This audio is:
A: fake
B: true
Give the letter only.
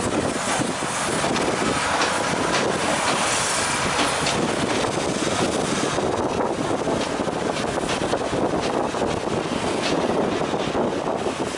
B